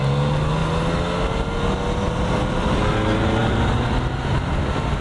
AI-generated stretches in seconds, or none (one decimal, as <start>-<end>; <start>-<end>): none